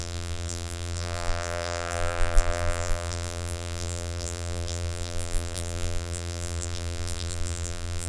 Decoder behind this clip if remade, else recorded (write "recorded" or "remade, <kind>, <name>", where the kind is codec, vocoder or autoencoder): remade, vocoder, BigVGAN v2